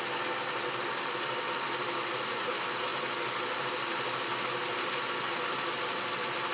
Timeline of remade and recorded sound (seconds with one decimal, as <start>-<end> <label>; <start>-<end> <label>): 0.0-2.0 recorded; 2.0-2.5 remade; 2.5-6.5 recorded